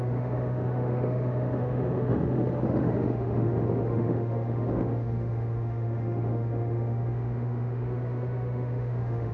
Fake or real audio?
fake